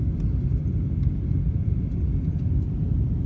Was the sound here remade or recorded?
recorded